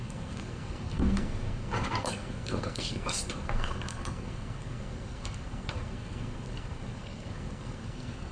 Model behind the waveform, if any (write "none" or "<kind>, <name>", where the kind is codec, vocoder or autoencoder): codec, SNAC